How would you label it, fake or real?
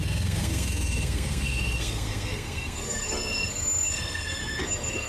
fake